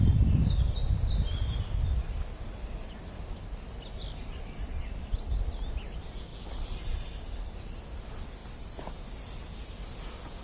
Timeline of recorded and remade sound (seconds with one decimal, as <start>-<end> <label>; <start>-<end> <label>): 0.0-10.4 recorded